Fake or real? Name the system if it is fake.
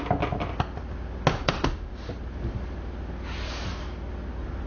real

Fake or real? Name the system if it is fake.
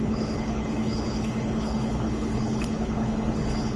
fake, codec, HILCodec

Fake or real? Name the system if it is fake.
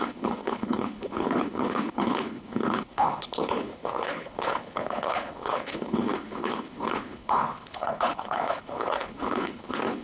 fake, codec, HILCodec